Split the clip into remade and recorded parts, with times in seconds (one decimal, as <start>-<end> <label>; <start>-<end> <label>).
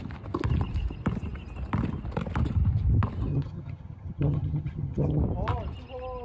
0.0-3.3 recorded; 3.3-5.2 remade; 5.2-6.2 recorded